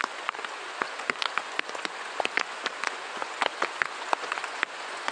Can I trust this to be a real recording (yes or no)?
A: no